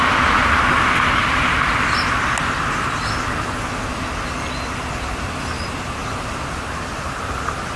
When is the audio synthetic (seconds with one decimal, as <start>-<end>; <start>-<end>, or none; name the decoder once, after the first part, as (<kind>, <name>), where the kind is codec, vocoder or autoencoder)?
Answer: none